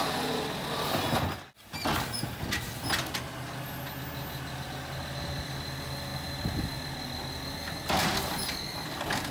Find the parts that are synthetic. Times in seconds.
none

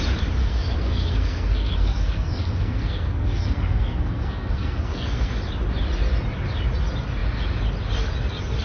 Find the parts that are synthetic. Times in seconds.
0.4-5.4 (codec, SNAC)